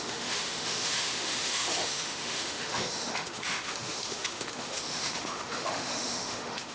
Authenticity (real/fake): fake